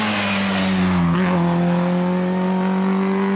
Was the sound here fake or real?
real